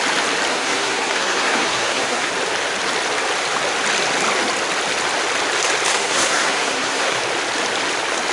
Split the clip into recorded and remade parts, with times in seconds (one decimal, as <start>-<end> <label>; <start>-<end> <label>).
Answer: 0.0-0.5 recorded; 0.5-2.3 remade; 2.3-5.9 recorded; 5.9-7.2 remade; 7.2-8.3 recorded